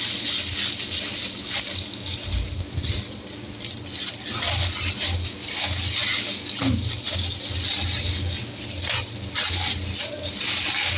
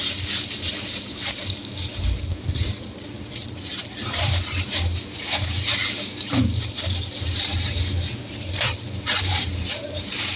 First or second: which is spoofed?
second